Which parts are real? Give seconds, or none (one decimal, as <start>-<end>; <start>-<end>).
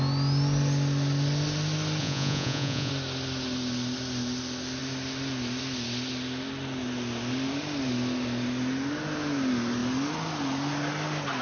0.0-2.0; 2.9-11.4